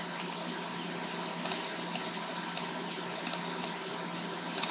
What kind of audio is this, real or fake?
real